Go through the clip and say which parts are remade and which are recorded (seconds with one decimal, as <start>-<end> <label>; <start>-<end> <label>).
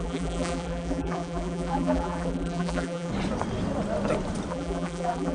0.0-3.1 remade; 3.1-4.5 recorded; 4.5-5.3 remade